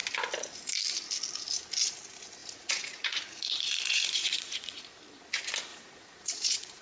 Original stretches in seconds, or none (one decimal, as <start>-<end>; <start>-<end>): 0.0-2.4; 4.9-5.7